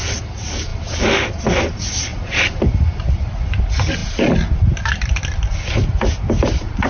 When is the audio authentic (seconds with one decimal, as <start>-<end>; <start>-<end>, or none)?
0.0-2.1; 3.6-6.9